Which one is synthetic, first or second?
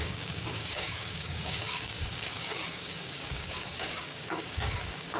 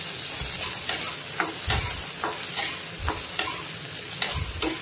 first